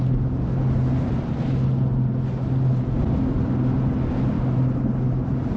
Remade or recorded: recorded